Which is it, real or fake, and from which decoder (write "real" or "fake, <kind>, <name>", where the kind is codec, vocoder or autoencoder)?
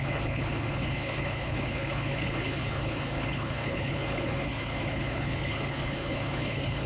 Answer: fake, codec, HILCodec